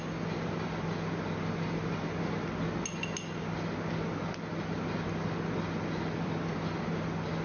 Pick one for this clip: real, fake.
real